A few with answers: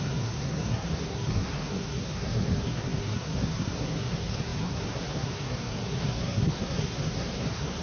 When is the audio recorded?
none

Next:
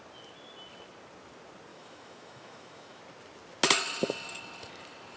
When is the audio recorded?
0.0-1.7; 3.0-5.2

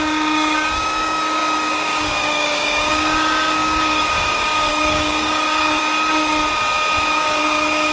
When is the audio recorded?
5.8-7.0

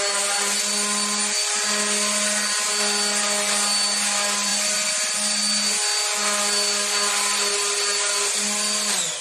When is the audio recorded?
0.0-9.2

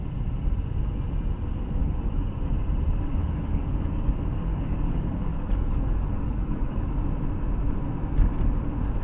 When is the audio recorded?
0.0-1.8; 2.4-3.1; 4.1-4.5; 6.9-9.0

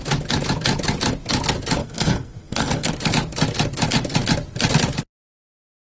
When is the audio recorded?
0.0-1.8; 2.9-5.9

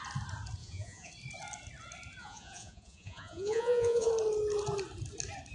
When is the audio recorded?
0.0-0.6; 1.1-2.2; 4.1-5.5